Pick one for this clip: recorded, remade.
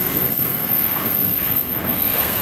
remade